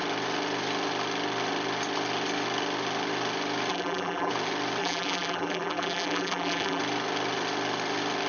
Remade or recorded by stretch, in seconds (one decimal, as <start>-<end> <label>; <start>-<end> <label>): 0.0-3.7 recorded; 3.7-4.3 remade; 4.3-4.8 recorded; 4.8-6.8 remade; 6.8-8.3 recorded